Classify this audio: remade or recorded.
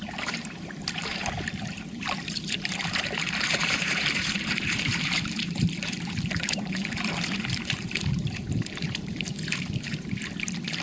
remade